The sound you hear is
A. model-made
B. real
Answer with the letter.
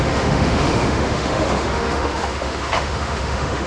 A